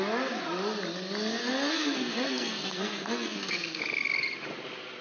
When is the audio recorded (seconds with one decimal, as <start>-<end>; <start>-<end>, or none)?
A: 0.0-1.4; 3.8-5.0